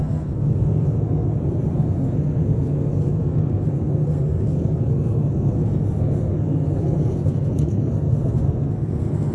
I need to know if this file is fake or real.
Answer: fake